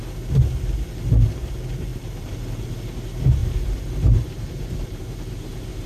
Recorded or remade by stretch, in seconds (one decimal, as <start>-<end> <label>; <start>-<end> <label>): 0.0-1.9 recorded; 1.9-2.8 remade; 2.8-3.4 recorded; 3.4-5.9 remade